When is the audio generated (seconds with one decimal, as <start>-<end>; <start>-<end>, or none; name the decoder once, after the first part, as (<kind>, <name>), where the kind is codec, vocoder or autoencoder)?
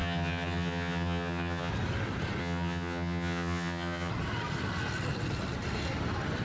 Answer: 0.0-1.7 (vocoder, HiFi-GAN); 2.4-4.1